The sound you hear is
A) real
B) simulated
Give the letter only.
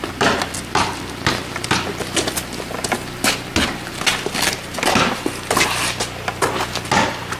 A